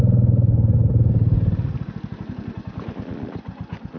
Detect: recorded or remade recorded